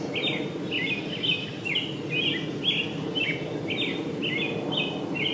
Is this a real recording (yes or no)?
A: yes